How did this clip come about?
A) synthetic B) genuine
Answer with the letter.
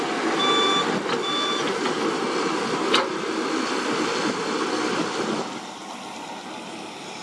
B